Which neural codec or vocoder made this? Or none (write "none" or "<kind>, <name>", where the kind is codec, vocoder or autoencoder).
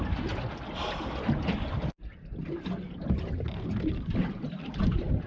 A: none